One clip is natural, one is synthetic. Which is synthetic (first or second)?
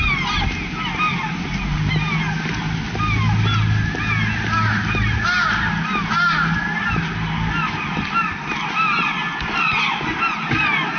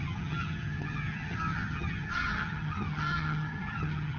second